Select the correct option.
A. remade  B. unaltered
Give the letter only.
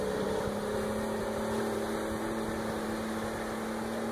B